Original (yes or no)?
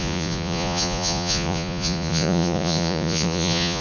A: no